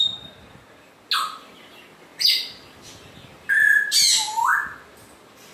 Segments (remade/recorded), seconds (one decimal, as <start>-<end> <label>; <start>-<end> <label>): 0.0-5.5 recorded